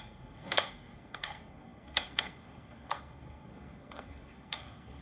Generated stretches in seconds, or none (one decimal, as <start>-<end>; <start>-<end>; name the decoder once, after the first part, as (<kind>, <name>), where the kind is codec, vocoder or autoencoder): 0.0-5.0 (codec, SNAC)